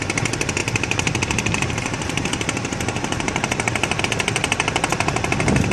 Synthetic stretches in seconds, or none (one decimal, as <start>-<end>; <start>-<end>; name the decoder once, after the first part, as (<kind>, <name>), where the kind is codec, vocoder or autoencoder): 0.6-4.0 (vocoder, BigVGAN v2)